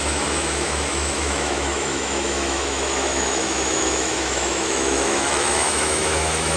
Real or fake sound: fake